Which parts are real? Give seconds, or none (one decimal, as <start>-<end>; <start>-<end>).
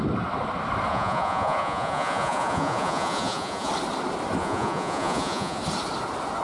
0.0-0.9; 3.7-4.4; 5.6-6.4